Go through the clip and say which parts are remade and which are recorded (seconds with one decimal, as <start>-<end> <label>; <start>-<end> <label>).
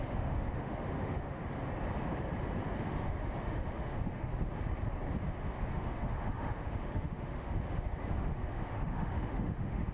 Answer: 0.0-1.4 remade; 1.4-2.8 recorded; 2.8-4.3 remade; 4.3-5.7 recorded; 5.7-9.9 remade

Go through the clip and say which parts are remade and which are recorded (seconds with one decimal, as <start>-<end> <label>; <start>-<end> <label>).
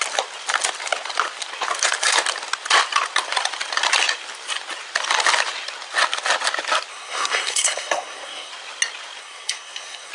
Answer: 0.0-6.9 recorded; 6.9-8.5 remade; 8.5-9.2 recorded; 9.2-10.1 remade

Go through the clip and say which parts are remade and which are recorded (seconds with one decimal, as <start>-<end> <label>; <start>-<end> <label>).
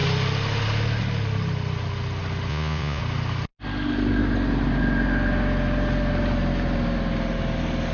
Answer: 0.0-2.5 recorded; 2.5-3.0 remade; 3.0-7.9 recorded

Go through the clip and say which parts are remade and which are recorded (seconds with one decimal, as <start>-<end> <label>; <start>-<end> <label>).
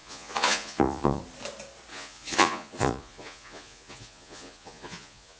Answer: 0.0-1.2 remade; 1.2-1.9 recorded; 1.9-5.4 remade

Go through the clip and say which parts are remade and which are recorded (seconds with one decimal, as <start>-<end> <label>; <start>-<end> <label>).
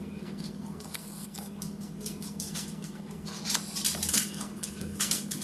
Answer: 0.0-3.4 remade; 3.4-4.1 recorded; 4.1-5.4 remade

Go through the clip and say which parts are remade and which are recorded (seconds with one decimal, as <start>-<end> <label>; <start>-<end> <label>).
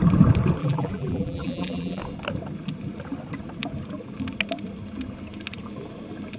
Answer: 0.0-0.6 recorded; 0.6-2.0 remade; 2.0-6.4 recorded